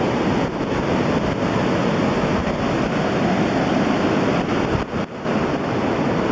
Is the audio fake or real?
real